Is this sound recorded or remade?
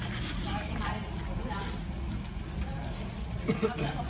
recorded